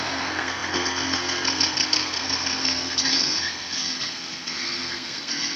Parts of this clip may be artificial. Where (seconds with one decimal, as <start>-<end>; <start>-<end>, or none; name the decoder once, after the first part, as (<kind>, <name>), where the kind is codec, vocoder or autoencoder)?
0.0-5.6 (codec, SNAC)